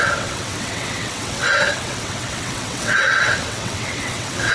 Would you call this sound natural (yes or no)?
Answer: no